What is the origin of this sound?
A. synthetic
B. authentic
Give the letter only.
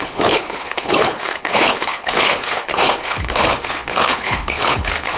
A